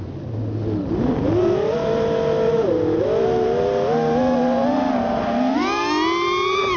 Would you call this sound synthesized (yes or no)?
no